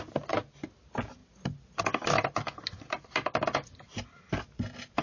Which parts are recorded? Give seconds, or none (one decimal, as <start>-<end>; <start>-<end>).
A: 0.0-5.0